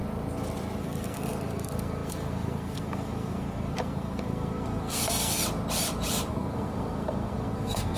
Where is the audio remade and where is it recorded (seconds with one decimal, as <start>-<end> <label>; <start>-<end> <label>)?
0.0-0.8 recorded; 0.8-5.4 remade; 5.4-6.3 recorded; 6.3-8.0 remade

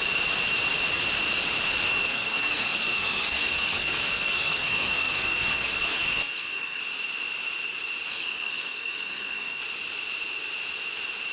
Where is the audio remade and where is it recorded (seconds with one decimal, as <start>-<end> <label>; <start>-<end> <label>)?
0.0-2.0 recorded; 2.0-6.8 remade; 6.8-8.1 recorded; 8.1-9.6 remade; 9.6-11.3 recorded

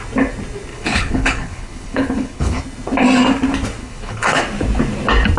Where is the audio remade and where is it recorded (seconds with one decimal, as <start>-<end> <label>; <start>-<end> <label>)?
0.0-0.7 recorded; 0.7-2.6 remade; 2.6-3.8 recorded; 3.8-4.4 remade; 4.4-5.4 recorded

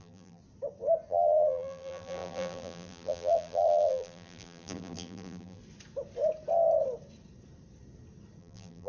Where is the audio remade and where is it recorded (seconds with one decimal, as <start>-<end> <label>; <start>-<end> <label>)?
0.0-0.4 remade; 0.4-1.1 recorded; 1.1-5.6 remade; 5.6-8.4 recorded; 8.4-8.9 remade

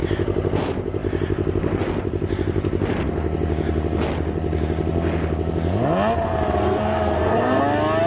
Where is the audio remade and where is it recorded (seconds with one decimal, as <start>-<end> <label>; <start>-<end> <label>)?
0.0-6.6 recorded; 6.6-7.6 remade; 7.6-8.1 recorded